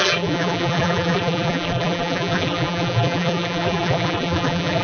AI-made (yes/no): yes